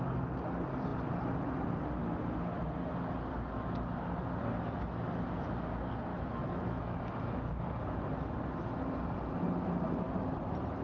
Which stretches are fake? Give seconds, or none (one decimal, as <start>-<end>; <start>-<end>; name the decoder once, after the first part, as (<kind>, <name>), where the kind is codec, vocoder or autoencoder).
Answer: 6.1-7.6 (autoencoder, DAC-VAE)